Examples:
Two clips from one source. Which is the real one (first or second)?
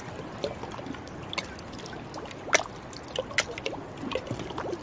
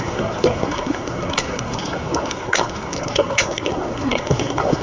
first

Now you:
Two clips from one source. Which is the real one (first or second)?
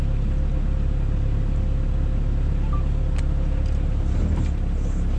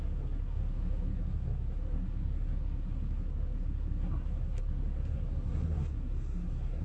first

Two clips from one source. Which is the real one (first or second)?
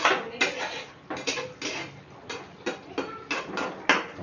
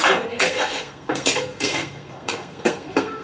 first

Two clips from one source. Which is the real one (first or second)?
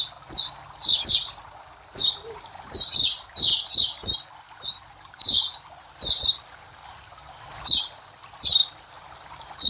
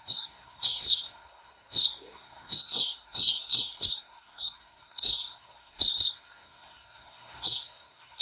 first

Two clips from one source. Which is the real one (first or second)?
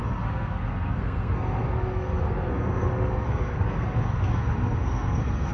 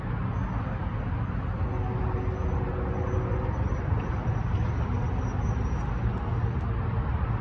second